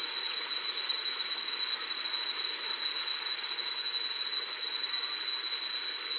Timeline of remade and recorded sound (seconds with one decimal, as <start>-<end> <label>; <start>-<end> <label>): 0.0-3.7 remade; 3.7-4.2 recorded; 4.2-4.9 remade; 4.9-6.2 recorded